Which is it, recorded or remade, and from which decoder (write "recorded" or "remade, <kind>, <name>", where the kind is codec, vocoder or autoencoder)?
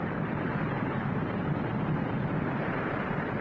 remade, vocoder, BigVGAN v2